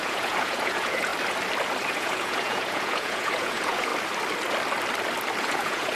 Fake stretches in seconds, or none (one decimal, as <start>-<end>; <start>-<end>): 0.0-1.1; 1.9-3.9; 5.4-6.0